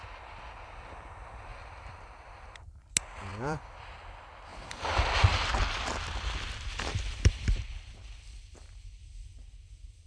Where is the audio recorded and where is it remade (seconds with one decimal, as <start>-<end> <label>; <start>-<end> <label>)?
0.0-1.5 recorded; 1.5-2.8 remade; 2.8-3.3 recorded; 3.3-3.8 remade; 3.8-4.5 recorded; 4.5-9.0 remade; 9.0-10.1 recorded